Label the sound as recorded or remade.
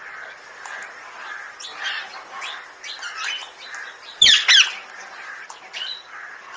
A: recorded